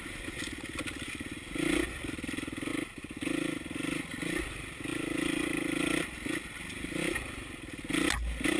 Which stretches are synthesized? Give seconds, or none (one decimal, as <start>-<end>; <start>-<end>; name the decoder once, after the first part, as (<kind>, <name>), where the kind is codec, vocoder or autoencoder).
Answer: none